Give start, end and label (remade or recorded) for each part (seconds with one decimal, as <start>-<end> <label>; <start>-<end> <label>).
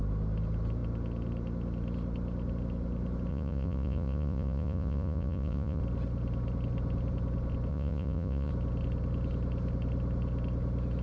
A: 0.0-3.3 recorded; 3.3-5.8 remade; 5.8-7.7 recorded; 7.7-8.5 remade; 8.5-11.0 recorded